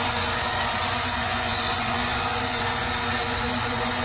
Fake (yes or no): yes